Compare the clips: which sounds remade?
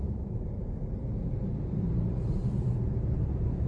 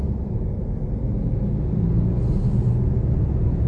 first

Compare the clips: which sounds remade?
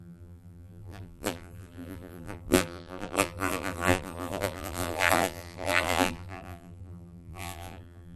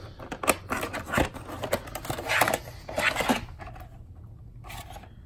first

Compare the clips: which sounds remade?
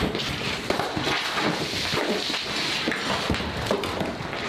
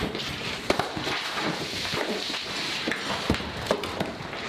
second